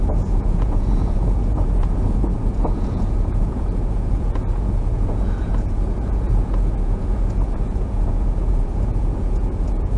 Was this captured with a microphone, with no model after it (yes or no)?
no